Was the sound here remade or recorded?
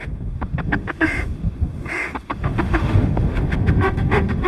remade